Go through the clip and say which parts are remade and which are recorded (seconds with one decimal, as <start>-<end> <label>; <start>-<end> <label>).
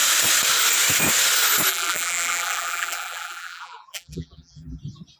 0.0-1.7 recorded; 1.7-4.8 remade; 4.8-5.2 recorded